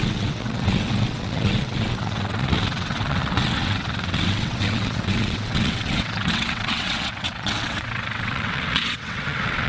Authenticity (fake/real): fake